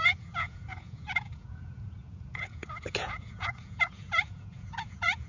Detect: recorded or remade remade